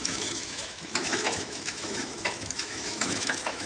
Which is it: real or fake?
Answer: fake